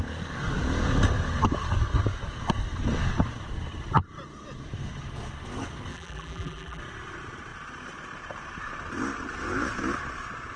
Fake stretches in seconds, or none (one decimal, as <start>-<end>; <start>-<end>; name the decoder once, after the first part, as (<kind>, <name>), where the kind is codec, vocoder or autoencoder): 5.9-6.8 (vocoder, BigVGAN v2)